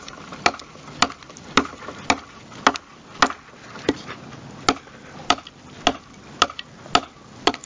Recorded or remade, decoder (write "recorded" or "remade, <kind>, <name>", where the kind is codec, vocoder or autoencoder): recorded